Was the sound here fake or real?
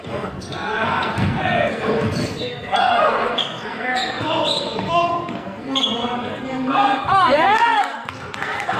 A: fake